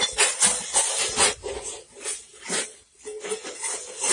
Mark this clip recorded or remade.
recorded